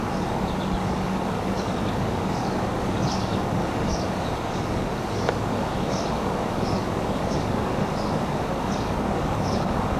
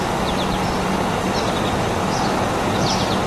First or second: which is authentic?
second